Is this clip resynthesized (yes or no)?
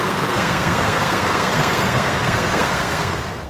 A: yes